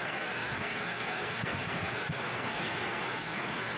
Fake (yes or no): yes